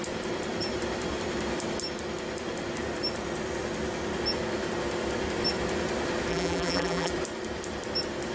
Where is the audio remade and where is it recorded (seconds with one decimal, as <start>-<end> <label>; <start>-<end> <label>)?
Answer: 0.0-6.3 recorded; 6.3-7.1 remade; 7.1-8.3 recorded